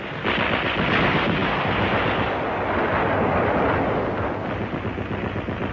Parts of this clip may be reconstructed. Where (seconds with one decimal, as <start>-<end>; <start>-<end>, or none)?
none